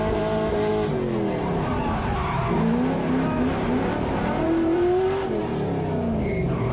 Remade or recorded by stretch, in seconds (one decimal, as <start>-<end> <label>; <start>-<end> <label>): 0.0-0.7 remade; 0.7-1.4 recorded; 1.4-2.4 remade; 2.4-3.9 recorded; 3.9-5.5 remade; 5.5-6.3 recorded; 6.3-6.7 remade